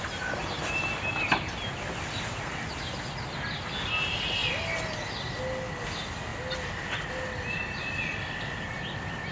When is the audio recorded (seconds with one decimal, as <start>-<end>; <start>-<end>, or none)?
0.0-9.3